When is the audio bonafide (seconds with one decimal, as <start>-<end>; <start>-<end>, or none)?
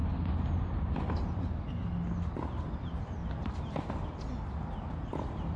0.0-5.6